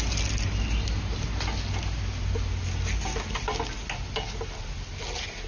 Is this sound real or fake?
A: real